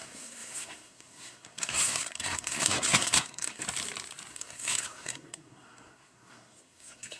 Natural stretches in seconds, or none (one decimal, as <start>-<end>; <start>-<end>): 3.6-4.3